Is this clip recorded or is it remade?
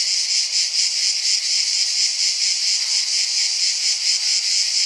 recorded